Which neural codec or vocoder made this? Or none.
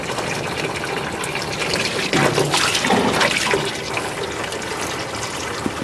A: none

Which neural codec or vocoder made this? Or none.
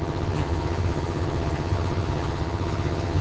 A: vocoder, HiFi-GAN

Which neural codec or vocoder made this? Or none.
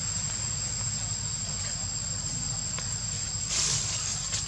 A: none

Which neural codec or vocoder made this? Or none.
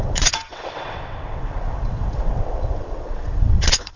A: vocoder, WaveNeXt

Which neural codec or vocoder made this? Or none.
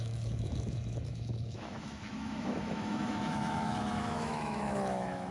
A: autoencoder, DAC-VAE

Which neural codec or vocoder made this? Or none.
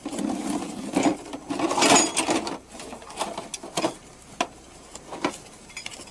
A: none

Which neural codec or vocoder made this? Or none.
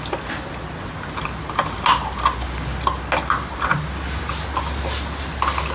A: none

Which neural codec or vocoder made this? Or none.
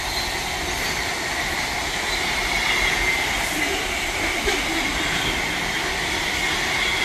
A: none